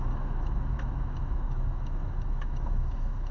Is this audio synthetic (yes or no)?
yes